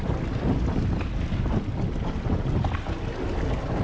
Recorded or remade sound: recorded